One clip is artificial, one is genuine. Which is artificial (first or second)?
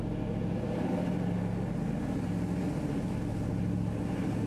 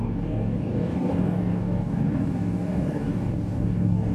second